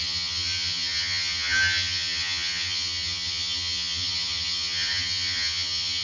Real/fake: fake